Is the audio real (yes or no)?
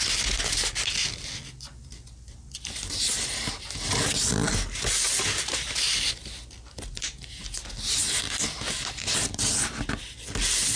yes